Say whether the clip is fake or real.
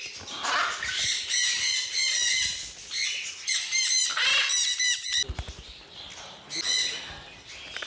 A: real